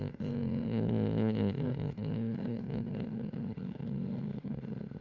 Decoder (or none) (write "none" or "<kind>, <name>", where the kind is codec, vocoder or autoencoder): autoencoder, DAC-VAE